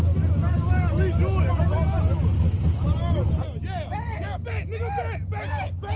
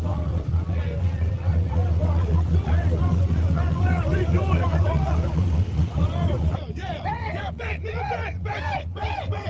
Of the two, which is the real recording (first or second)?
first